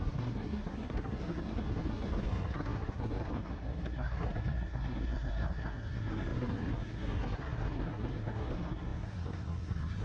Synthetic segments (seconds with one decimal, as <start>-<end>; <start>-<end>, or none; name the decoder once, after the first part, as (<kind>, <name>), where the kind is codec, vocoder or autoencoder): 0.0-10.0 (codec, SNAC)